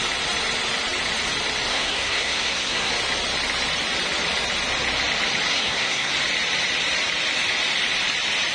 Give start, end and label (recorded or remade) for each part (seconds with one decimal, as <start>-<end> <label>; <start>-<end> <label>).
0.0-1.7 recorded; 1.7-2.9 remade; 2.9-5.5 recorded; 5.5-6.1 remade; 6.1-8.5 recorded